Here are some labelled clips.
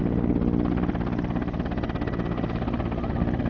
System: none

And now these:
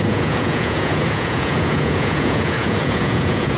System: vocoder, Vocos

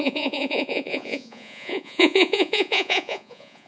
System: vocoder, Vocos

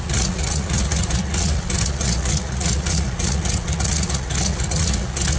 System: vocoder, Vocos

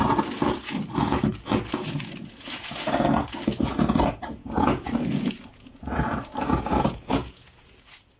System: vocoder, Vocos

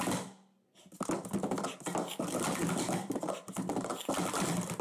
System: none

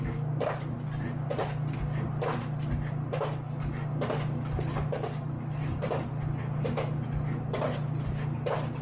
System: none